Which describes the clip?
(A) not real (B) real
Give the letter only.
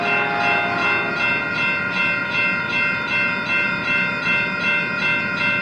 B